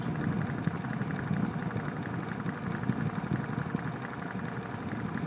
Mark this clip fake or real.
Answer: real